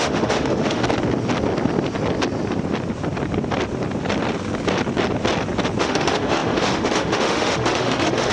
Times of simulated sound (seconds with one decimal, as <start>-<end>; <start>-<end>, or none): 0.0-0.8; 5.8-8.3